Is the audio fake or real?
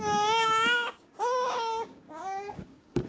fake